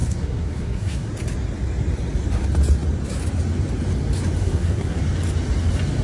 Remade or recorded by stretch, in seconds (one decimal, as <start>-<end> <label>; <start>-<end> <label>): 0.0-1.1 remade; 1.1-4.4 recorded; 4.4-5.0 remade; 5.0-6.0 recorded